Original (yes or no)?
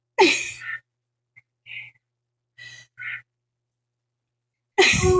yes